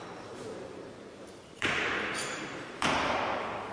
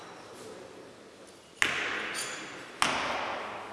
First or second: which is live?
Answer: second